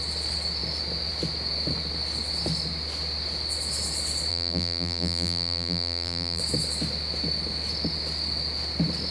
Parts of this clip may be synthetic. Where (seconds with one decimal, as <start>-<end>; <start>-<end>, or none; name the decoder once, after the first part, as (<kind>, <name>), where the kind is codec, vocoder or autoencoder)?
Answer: 4.3-6.4 (vocoder, BigVGAN v2)